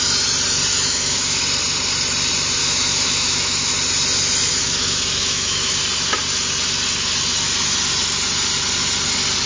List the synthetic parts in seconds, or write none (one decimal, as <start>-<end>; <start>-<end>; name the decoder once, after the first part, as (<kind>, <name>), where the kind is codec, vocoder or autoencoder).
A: 0.7-1.4 (autoencoder, DAC-VAE); 2.6-3.7; 4.5-5.8